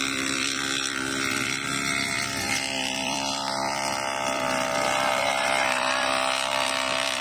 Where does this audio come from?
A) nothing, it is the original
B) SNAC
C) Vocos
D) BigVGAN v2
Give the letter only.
D